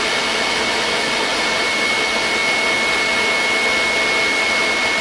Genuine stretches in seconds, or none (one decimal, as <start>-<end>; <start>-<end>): 0.0-1.3; 1.8-5.0